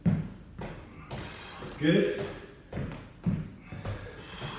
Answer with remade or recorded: recorded